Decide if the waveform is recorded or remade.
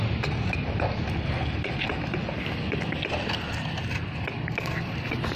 recorded